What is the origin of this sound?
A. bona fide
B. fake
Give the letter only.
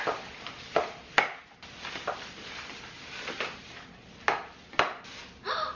A